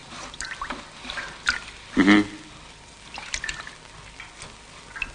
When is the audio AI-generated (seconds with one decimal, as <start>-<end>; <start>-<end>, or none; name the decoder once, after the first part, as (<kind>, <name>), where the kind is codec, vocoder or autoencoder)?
none